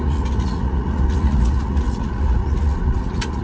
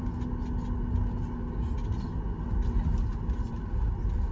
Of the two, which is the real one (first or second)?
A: second